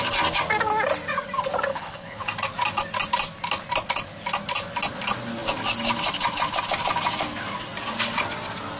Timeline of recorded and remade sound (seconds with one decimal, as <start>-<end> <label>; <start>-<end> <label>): 0.0-1.7 recorded; 1.7-2.2 remade; 2.2-8.8 recorded